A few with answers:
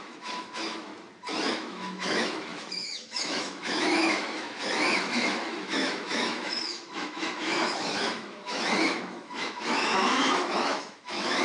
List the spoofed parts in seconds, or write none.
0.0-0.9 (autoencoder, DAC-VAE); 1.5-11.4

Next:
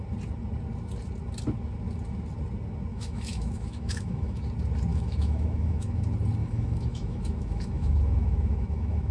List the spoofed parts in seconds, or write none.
2.9-4.4 (autoencoder, DAC-VAE); 4.9-6.0; 6.4-9.1

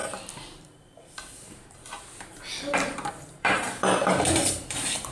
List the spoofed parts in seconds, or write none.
0.0-5.1 (vocoder, BigVGAN v2)

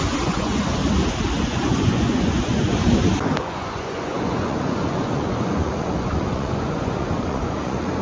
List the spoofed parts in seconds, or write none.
0.0-0.8 (vocoder, Vocos); 1.4-2.8; 3.4-8.0

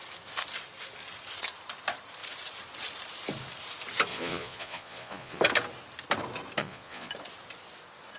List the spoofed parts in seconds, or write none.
4.1-5.4 (vocoder, Vocos); 6.6-7.1